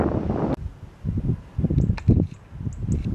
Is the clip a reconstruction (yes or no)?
no